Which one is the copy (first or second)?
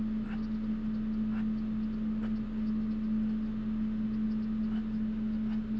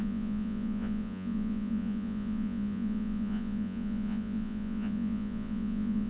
second